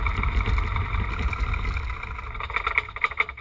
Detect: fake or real real